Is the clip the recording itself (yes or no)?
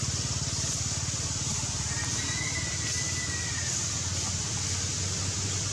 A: yes